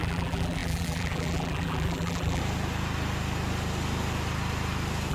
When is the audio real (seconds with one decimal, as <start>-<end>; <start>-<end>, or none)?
2.4-5.1